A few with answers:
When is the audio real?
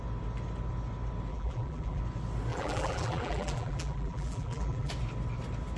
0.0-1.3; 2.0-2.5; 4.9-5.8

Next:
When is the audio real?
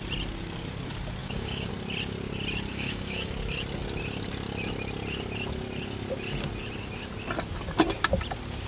0.0-1.2; 1.7-2.7; 3.3-8.7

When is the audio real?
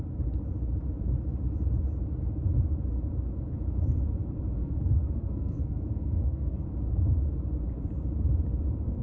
0.0-4.6; 6.6-9.0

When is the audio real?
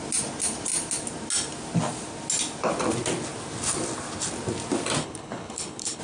0.0-5.0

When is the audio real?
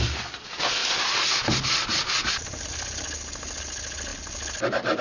0.0-5.0